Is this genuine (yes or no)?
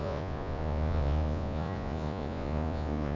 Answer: no